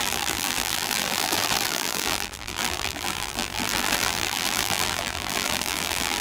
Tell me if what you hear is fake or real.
fake